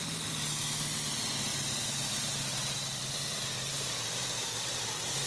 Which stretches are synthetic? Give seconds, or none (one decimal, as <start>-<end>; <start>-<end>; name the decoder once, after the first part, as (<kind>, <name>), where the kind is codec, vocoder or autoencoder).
none